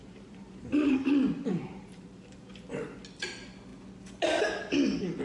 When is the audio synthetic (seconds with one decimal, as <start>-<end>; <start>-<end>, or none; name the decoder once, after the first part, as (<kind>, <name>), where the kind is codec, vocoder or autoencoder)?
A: 0.0-1.1 (vocoder, BigVGAN v2); 1.5-2.5